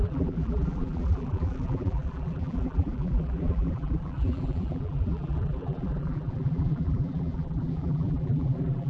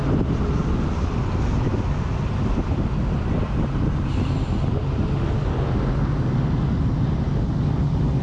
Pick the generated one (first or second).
first